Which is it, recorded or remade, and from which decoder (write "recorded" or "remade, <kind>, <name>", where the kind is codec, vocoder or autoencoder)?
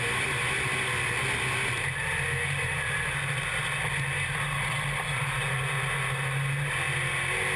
recorded